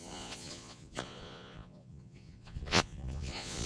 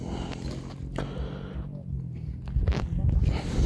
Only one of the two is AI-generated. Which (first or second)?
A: first